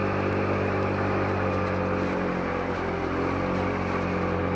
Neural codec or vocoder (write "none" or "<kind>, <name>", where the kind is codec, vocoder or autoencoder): none